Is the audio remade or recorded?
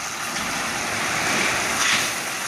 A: recorded